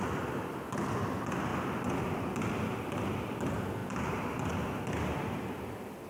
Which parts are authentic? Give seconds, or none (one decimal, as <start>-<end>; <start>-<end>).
1.5-2.0